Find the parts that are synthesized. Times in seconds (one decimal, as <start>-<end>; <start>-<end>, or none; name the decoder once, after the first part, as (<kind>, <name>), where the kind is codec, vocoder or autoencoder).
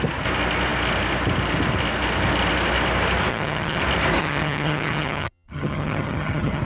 3.3-3.8 (vocoder, HiFi-GAN); 4.2-6.6